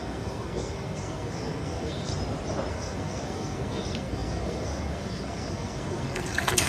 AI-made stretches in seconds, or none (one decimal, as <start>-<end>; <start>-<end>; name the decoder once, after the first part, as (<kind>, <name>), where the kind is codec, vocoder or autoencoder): 0.0-2.1 (codec, SNAC); 2.7-6.7